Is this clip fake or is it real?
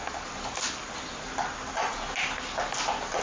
real